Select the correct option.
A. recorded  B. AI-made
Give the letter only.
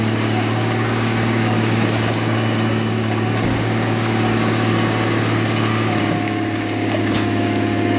B